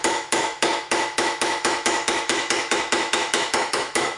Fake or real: fake